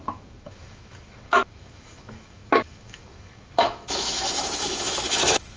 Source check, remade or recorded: remade